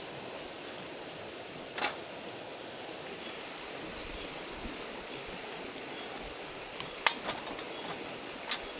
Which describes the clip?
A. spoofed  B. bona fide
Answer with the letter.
B